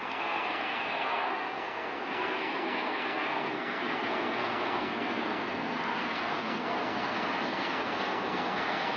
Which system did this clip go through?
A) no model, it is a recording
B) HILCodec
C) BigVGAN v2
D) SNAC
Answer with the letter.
D